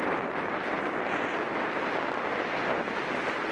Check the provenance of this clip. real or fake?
real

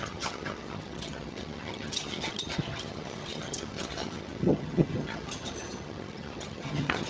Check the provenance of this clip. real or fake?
fake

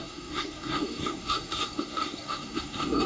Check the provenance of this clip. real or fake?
fake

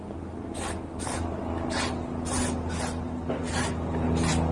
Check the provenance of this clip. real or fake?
real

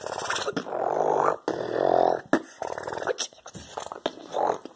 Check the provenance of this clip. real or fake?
real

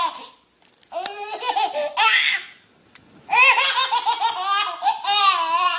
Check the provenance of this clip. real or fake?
real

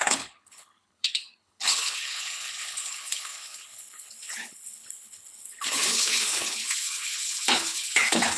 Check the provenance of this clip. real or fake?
fake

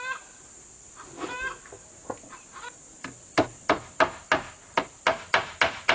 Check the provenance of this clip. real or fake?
real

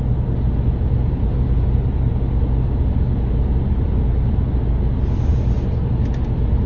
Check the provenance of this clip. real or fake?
real